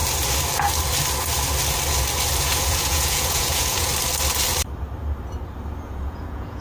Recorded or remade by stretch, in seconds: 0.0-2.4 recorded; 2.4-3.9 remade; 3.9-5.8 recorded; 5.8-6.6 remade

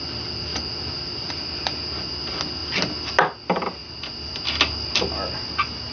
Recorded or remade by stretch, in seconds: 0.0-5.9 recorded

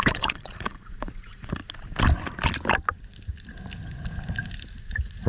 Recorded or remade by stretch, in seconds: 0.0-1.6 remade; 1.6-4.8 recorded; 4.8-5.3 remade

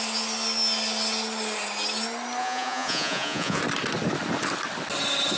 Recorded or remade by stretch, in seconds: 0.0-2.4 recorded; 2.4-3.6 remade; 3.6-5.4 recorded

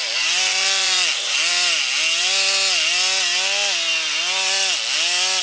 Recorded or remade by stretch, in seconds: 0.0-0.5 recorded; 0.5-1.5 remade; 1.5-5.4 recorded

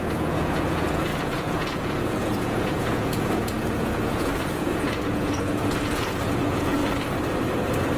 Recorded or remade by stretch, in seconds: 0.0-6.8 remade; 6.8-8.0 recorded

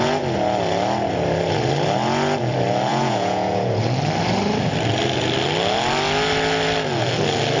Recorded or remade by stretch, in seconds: 0.0-2.9 recorded; 2.9-3.8 remade; 3.8-7.6 recorded